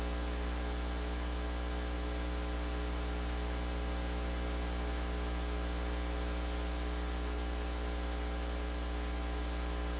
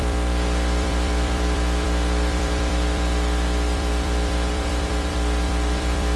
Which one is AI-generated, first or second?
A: second